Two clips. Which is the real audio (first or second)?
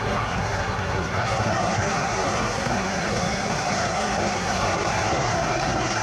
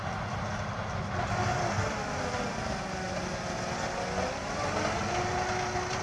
second